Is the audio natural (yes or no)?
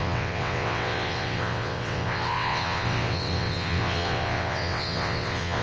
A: no